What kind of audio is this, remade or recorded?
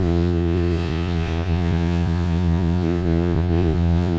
remade